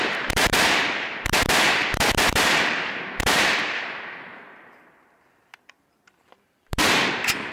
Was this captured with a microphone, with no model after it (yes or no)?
no